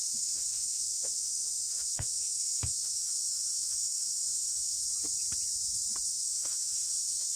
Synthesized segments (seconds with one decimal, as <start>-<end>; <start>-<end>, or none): 0.0-4.8; 6.1-7.4